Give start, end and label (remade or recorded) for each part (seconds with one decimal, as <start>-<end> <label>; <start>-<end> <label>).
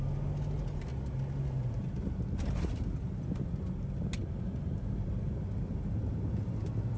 0.0-7.0 recorded